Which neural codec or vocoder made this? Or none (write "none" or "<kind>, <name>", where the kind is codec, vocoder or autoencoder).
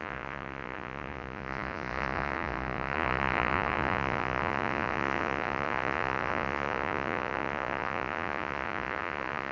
vocoder, Vocos